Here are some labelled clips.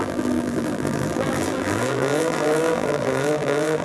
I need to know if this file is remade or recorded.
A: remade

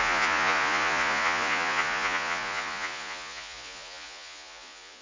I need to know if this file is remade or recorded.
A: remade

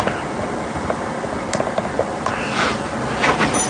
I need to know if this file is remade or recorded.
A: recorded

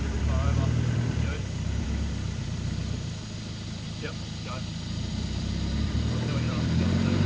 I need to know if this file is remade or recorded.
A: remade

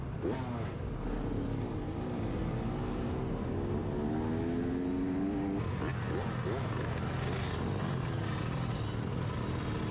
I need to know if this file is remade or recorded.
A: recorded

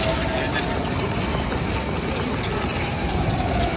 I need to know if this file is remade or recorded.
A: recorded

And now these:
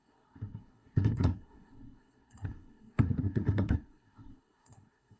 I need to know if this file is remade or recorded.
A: remade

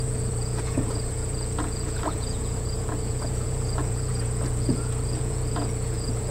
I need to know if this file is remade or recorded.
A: remade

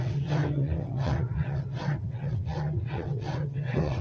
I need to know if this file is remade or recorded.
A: remade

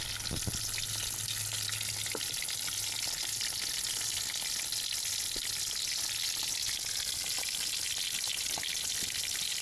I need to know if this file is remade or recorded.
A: recorded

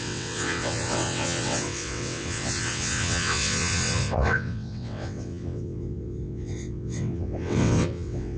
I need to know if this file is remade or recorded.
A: remade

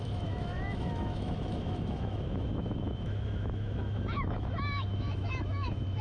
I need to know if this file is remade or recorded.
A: remade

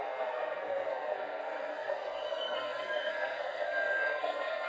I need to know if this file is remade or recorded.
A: remade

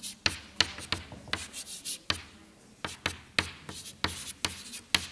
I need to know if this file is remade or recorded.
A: recorded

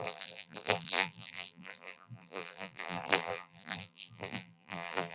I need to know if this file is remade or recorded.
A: remade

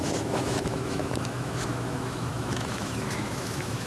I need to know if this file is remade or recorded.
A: remade